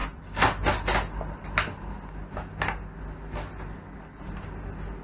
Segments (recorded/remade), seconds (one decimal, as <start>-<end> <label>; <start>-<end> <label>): 0.0-5.0 recorded